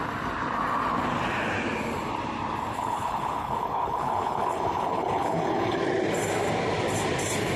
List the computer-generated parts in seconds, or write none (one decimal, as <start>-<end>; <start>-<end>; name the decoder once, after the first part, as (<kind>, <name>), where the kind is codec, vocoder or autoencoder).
2.7-5.8 (codec, HILCodec)